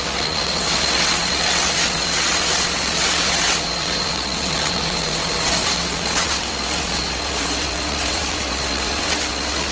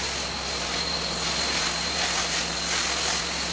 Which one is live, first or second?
second